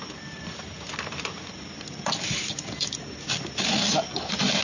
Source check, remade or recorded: recorded